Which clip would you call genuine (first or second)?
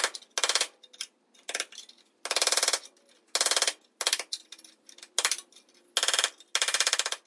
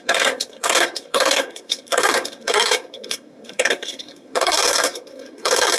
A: first